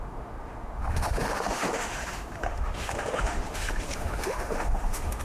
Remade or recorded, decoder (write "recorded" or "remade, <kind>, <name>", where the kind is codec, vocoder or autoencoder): remade, autoencoder, DAC-VAE